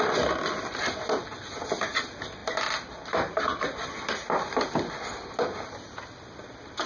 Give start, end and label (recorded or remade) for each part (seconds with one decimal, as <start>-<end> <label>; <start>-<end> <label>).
0.0-6.9 recorded